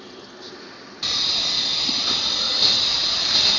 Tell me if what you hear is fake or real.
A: real